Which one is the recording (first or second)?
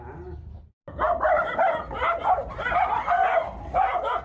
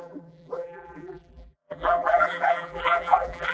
first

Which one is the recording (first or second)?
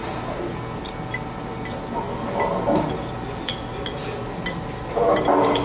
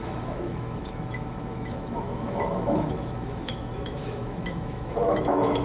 first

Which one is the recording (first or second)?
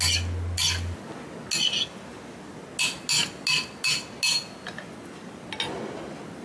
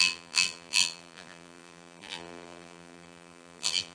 first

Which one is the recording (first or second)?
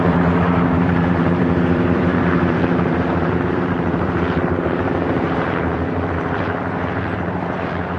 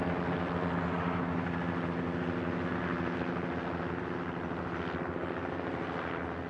second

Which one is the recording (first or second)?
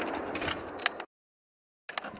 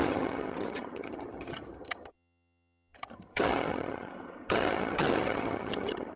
first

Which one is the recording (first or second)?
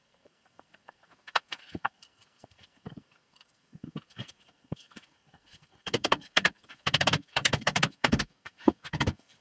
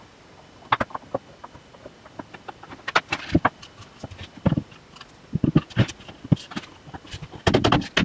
second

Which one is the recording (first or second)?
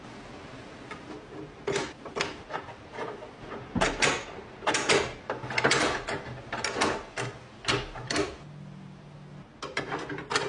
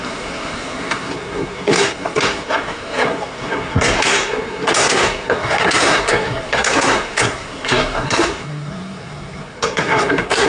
first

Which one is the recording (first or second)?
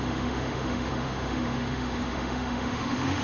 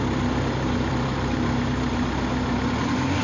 second